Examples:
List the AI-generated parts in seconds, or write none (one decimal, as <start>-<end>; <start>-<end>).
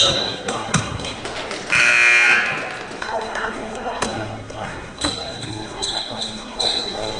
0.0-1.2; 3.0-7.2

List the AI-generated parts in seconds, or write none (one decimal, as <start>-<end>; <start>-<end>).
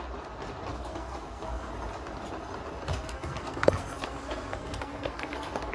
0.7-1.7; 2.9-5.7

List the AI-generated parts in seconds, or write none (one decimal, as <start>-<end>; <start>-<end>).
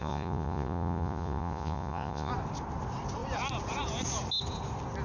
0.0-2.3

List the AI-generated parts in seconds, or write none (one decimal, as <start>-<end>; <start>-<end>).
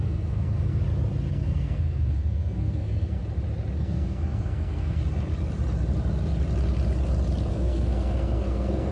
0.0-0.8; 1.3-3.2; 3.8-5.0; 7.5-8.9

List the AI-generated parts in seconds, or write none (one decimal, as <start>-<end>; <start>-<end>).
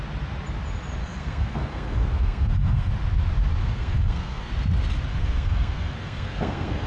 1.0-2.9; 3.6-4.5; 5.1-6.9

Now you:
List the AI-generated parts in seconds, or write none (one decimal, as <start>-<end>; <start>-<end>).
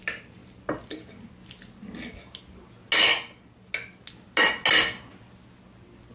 none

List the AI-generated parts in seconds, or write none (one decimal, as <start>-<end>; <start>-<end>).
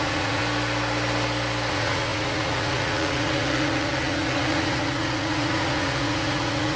0.0-0.4; 1.7-6.8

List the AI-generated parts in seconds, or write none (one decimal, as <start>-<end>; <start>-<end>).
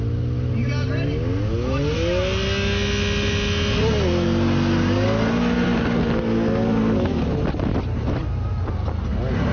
none